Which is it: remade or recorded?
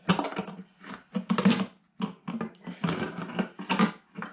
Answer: recorded